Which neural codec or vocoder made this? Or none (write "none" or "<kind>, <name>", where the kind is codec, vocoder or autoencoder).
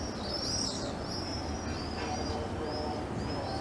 none